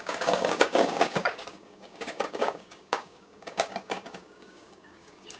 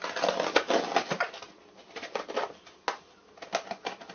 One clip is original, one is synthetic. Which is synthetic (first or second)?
first